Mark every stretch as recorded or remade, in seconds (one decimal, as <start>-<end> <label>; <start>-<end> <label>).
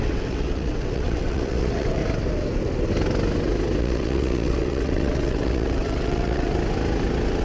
0.0-2.0 remade; 2.0-3.8 recorded; 3.8-6.5 remade; 6.5-7.4 recorded